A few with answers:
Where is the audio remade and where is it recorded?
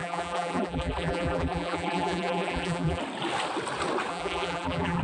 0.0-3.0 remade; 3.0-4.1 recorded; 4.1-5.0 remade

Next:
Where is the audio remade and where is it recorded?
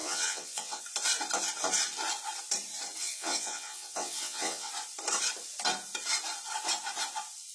0.0-0.8 remade; 0.8-3.0 recorded; 3.0-4.7 remade; 4.7-7.5 recorded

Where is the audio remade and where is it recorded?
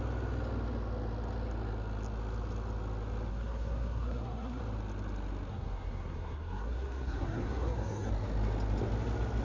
0.0-3.3 recorded; 3.3-4.6 remade; 4.6-5.5 recorded; 5.5-8.1 remade; 8.1-9.4 recorded